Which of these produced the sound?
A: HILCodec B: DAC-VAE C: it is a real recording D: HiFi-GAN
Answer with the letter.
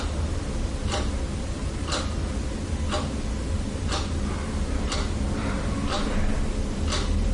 C